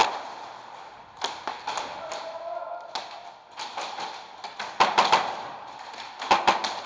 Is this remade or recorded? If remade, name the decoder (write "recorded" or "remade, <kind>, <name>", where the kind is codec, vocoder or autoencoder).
recorded